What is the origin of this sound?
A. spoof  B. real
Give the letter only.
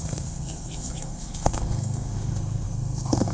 A